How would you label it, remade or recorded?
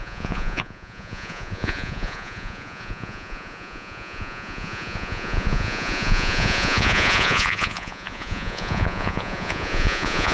remade